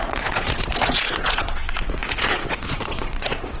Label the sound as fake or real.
fake